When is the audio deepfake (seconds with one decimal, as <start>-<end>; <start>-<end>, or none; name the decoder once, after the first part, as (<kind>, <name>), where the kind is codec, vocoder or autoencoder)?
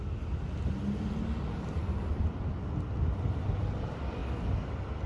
1.8-2.4 (vocoder, BigVGAN v2)